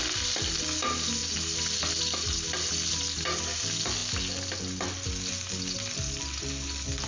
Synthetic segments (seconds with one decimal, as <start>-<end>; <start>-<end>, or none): none